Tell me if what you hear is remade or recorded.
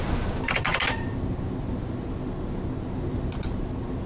recorded